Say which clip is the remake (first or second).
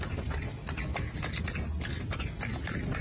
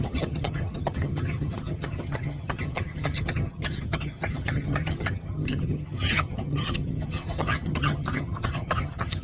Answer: second